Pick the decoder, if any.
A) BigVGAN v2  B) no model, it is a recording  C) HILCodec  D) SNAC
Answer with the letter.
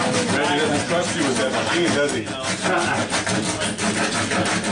B